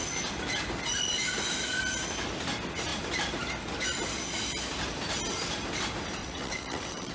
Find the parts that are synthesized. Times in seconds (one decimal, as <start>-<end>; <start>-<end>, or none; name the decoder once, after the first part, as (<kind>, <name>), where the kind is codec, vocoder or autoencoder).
6.2-7.1 (vocoder, WaveNeXt)